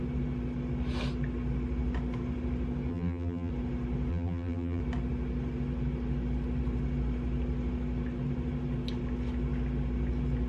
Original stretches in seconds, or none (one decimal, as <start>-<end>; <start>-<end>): 0.0-2.9; 3.5-4.1; 4.8-10.5